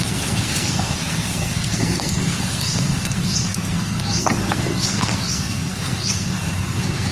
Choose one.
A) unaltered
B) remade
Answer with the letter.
B